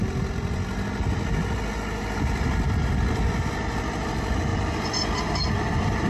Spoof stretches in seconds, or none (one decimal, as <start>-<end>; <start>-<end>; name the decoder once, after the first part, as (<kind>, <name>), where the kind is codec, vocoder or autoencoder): 4.5-6.1 (vocoder, BigVGAN v2)